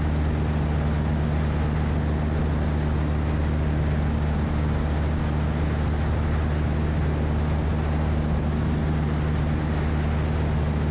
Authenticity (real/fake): real